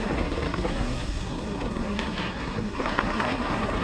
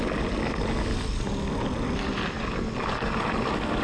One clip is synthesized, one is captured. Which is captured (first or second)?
second